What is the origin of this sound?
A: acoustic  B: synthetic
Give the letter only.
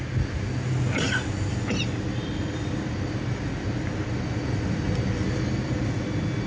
A